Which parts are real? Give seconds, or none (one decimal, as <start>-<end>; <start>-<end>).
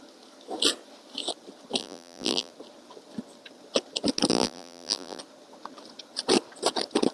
0.0-1.8; 2.5-4.3; 5.2-7.1